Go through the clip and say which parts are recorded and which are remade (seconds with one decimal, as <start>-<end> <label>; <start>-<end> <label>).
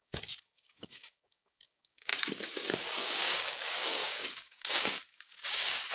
0.0-5.9 remade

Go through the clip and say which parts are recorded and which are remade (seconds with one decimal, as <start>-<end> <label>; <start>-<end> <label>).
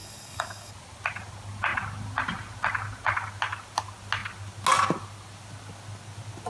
0.0-0.7 remade; 0.7-6.5 recorded